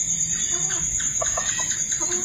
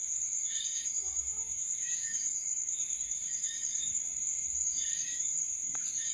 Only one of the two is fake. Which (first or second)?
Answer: second